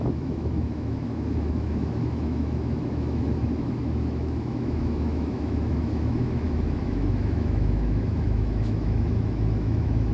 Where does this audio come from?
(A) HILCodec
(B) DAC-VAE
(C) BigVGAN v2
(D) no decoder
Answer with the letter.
B